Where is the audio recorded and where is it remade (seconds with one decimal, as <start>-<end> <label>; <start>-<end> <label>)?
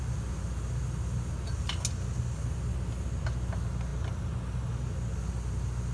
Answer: 0.0-5.9 recorded